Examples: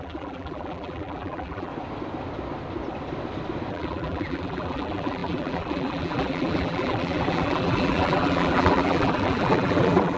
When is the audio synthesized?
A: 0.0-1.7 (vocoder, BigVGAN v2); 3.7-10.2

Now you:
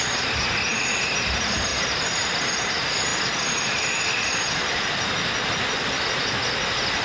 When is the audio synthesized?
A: 0.0-0.7 (vocoder, BigVGAN v2); 1.2-1.7; 2.4-3.1